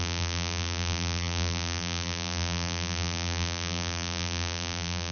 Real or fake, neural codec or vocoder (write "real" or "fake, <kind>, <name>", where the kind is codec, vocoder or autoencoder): fake, vocoder, BigVGAN v2